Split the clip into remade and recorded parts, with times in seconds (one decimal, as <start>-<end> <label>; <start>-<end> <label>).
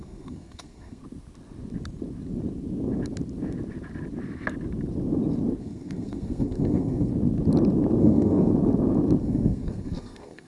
0.0-1.0 remade; 1.0-5.6 recorded; 5.6-7.1 remade; 7.1-8.0 recorded; 8.0-8.5 remade; 8.5-9.2 recorded; 9.2-10.5 remade